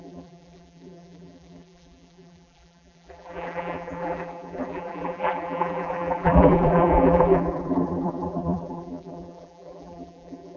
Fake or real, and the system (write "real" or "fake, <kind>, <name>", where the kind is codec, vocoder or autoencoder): fake, vocoder, BigVGAN v2